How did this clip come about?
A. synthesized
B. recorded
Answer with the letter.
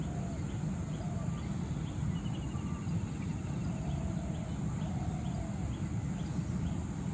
B